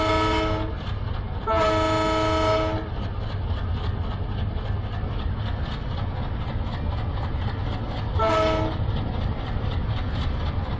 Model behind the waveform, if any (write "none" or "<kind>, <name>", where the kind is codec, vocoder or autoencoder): none